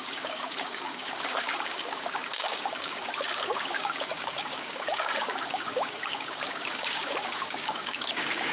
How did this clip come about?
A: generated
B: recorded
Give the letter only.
A